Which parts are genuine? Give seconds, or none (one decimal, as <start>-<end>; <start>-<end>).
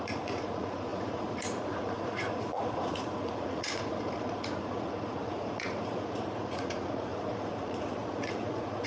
none